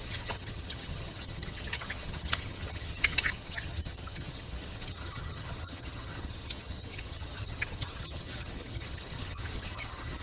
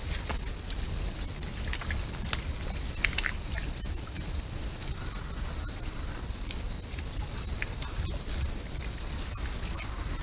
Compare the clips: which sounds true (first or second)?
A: second